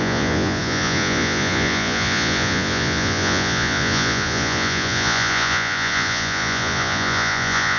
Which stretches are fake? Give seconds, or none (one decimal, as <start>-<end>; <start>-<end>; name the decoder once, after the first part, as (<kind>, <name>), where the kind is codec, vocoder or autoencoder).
0.0-7.8 (vocoder, Vocos)